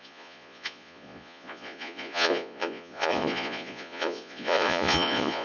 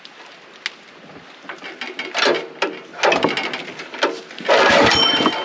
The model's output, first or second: first